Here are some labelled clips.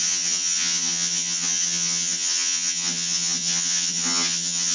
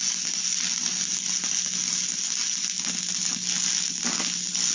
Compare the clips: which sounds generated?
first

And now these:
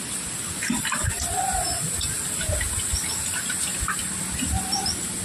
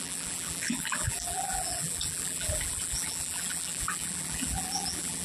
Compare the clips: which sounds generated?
second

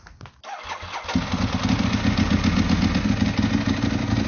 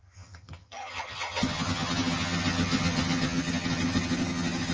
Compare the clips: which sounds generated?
second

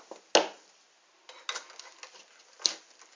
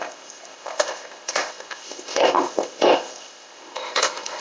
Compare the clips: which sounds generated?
second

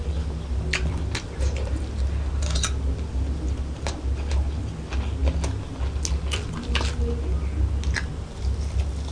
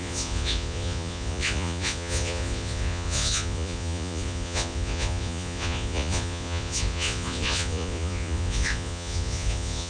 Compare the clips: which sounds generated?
second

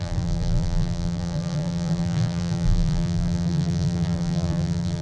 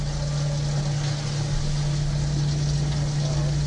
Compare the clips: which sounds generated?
first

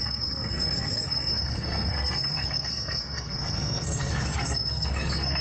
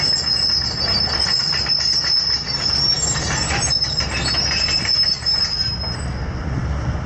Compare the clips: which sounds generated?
first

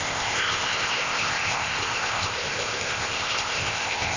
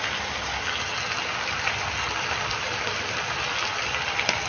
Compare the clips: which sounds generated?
first